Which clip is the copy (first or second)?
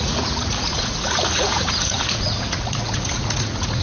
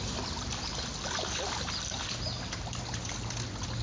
first